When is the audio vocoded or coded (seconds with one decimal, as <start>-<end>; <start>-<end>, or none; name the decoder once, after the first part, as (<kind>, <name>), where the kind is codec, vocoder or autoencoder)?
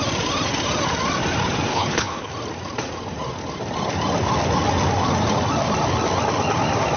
1.7-2.3 (codec, HILCodec)